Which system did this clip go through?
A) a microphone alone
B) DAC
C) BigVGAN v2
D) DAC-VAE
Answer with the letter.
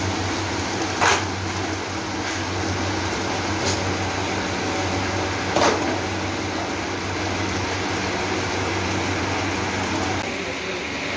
A